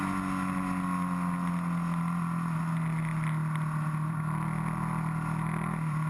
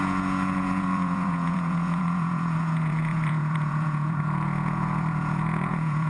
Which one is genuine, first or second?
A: first